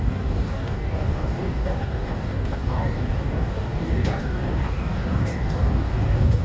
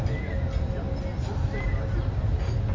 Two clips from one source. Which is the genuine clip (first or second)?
second